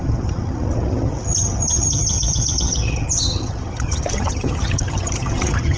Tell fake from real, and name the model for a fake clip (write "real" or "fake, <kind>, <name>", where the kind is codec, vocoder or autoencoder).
fake, vocoder, HiFi-GAN